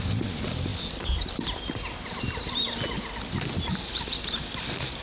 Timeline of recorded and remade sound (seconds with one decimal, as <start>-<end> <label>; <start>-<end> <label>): 0.0-5.0 recorded